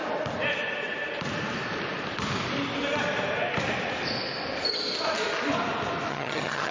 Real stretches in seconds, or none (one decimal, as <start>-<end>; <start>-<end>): 0.0-6.1